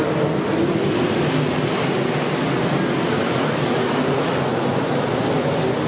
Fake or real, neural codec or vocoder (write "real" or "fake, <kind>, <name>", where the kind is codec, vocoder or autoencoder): real